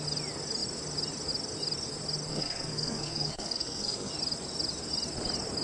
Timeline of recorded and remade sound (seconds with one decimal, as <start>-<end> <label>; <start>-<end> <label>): 0.0-2.3 recorded; 2.3-4.1 remade; 4.1-5.6 recorded